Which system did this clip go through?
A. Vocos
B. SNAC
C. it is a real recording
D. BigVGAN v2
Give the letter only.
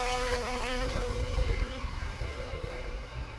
B